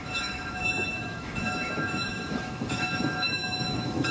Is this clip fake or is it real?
fake